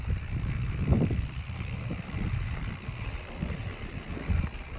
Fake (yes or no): no